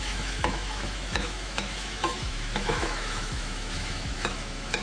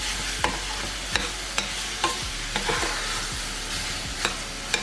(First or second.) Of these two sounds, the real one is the second